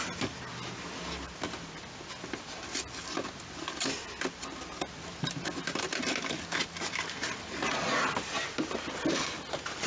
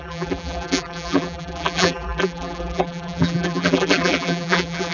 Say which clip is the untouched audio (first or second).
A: first